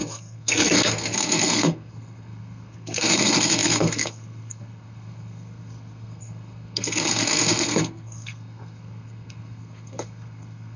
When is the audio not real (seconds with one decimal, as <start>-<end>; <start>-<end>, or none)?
0.0-10.8